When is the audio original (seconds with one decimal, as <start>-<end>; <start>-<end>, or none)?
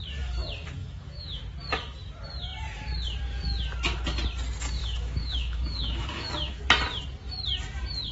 0.0-0.8; 1.4-4.8; 6.6-8.1